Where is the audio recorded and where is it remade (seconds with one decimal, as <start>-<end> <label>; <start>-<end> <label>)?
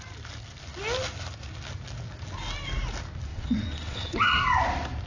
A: 0.0-3.3 recorded; 3.3-4.4 remade; 4.4-5.1 recorded